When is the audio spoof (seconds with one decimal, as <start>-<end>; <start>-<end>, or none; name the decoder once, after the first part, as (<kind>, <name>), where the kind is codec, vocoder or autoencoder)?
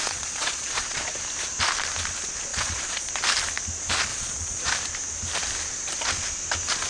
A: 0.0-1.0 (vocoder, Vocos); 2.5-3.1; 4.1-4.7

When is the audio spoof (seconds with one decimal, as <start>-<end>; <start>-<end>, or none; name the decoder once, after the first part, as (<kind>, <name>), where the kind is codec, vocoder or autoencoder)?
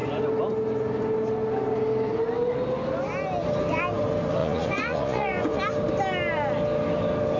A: 4.4-5.6 (vocoder, Vocos)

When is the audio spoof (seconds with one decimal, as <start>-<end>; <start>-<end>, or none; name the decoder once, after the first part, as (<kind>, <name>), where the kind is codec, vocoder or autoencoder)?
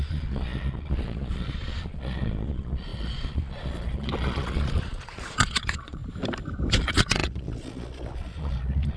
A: 0.0-6.0 (vocoder, Vocos); 6.8-9.0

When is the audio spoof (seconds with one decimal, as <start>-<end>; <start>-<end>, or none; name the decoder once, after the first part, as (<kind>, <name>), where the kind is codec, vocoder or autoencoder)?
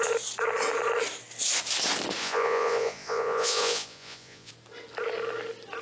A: 2.2-4.5 (vocoder, Vocos)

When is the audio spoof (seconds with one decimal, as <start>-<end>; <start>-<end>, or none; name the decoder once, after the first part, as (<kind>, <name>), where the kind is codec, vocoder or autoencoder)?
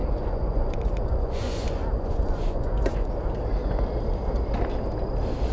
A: 0.0-3.1 (vocoder, Vocos)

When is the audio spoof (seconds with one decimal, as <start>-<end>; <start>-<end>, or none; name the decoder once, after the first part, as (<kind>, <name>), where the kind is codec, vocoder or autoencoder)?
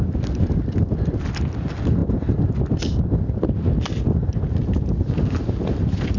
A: none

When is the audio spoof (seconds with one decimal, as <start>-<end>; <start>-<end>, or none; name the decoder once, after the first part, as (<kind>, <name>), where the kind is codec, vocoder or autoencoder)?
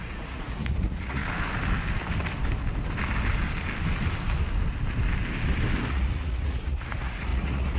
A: 0.0-1.2 (vocoder, Vocos); 5.9-7.8